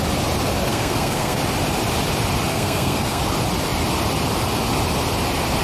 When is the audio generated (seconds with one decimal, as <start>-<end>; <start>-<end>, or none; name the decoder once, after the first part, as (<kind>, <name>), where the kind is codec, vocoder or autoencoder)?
0.7-1.4 (codec, SNAC); 2.5-3.2